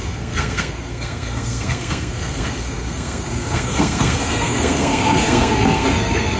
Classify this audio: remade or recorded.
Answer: remade